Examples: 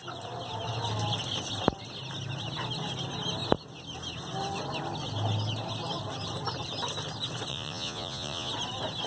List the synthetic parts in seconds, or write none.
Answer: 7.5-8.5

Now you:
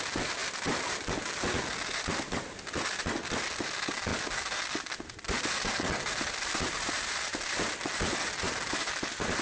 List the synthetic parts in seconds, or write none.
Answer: none

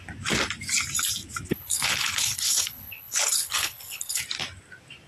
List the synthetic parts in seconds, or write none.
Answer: 1.5-4.2

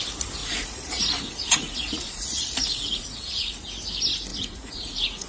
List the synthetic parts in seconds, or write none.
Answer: 0.4-3.6; 4.3-5.3

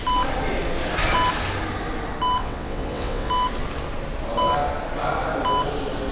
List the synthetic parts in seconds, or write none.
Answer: 2.4-3.3